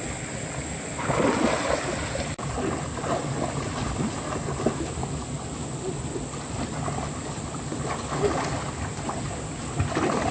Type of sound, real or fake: real